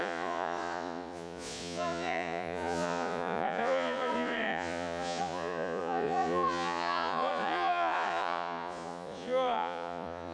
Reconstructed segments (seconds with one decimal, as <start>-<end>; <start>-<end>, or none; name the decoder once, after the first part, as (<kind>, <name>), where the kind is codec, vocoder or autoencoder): 0.0-10.3 (vocoder, Vocos)